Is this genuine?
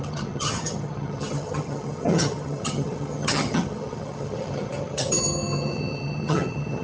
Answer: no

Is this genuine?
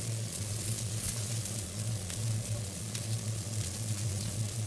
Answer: no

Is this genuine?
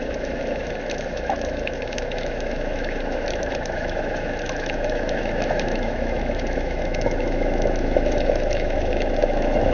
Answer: no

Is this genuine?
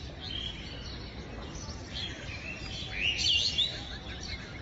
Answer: yes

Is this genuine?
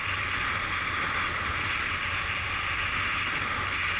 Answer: yes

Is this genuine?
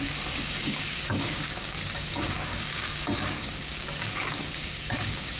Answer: no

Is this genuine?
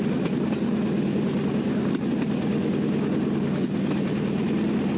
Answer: yes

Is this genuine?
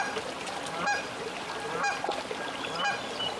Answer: yes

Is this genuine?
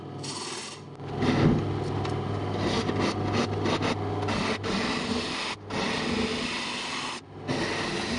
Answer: yes